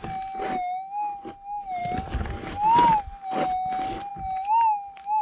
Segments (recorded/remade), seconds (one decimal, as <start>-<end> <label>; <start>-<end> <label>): 0.0-5.2 recorded